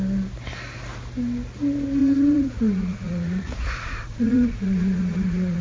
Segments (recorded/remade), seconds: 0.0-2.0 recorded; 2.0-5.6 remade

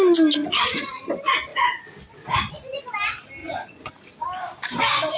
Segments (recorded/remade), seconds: 0.0-0.4 recorded; 0.4-1.1 remade; 1.1-3.4 recorded; 3.4-3.9 remade; 3.9-5.2 recorded

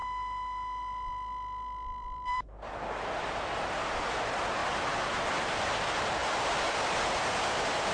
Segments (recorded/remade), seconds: 0.0-0.8 recorded; 0.8-7.9 remade

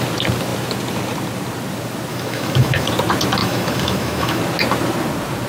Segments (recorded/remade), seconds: 0.0-2.1 recorded; 2.1-2.9 remade; 2.9-3.4 recorded; 3.4-4.4 remade; 4.4-5.5 recorded